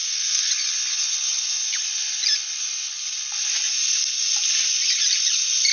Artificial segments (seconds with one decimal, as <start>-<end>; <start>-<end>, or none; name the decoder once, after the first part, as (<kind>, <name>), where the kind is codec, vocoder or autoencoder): 0.0-0.5 (codec, SNAC)